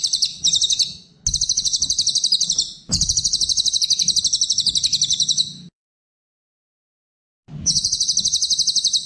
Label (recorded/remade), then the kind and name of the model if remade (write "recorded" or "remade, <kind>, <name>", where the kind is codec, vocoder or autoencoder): recorded